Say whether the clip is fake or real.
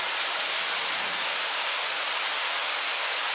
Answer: real